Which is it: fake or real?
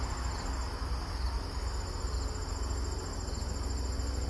real